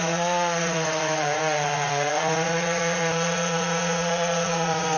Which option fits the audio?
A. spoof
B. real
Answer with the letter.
A